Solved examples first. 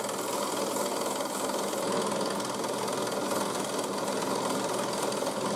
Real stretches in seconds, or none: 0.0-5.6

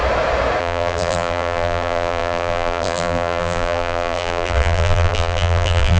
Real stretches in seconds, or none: 0.0-0.6

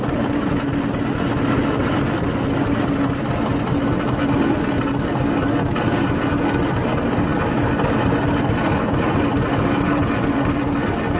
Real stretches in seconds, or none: 0.0-11.2

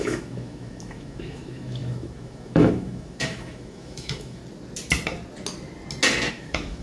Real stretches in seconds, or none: 4.4-6.3

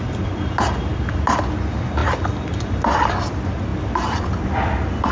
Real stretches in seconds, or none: 0.0-5.1

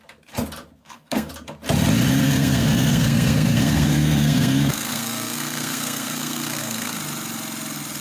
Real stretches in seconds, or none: 0.0-0.8; 1.3-2.2; 7.0-8.0

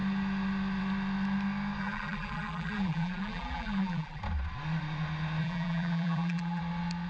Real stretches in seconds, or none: 0.0-1.8; 4.2-5.4; 6.6-7.1